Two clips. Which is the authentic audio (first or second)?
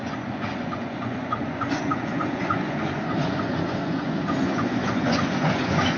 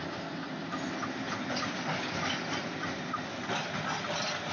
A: second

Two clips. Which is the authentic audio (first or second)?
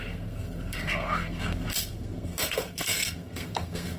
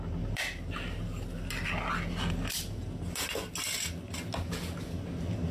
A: second